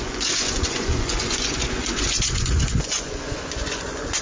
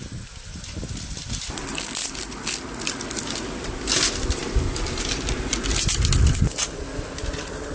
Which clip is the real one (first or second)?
second